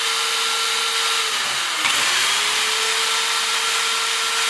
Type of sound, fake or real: real